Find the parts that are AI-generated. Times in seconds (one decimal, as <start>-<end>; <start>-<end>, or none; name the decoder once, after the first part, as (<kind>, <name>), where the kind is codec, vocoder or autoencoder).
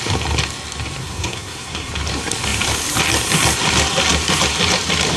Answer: 1.0-1.9 (codec, SNAC)